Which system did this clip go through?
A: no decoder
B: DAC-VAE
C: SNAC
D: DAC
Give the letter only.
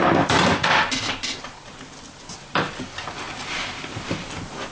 A